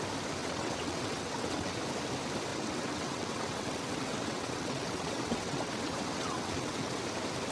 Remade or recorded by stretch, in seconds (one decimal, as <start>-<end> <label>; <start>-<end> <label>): 0.0-0.4 recorded; 0.4-1.8 remade; 1.8-2.5 recorded; 2.5-7.0 remade; 7.0-7.5 recorded